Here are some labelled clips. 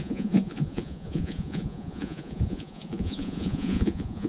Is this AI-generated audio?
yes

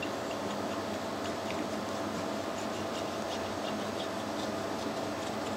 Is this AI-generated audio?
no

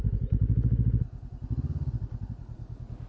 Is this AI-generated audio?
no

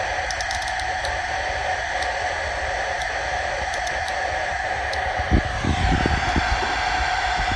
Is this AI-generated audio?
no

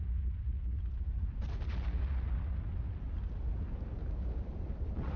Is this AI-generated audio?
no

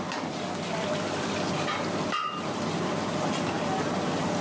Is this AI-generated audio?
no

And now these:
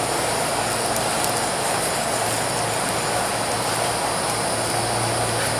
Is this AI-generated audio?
no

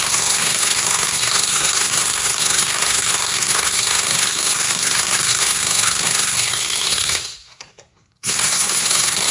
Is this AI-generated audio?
yes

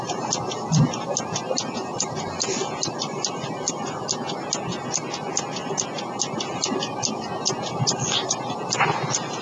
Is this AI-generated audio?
no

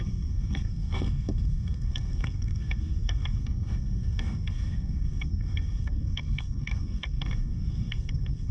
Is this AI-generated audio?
yes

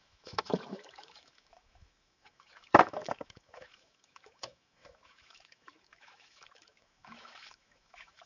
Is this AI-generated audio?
yes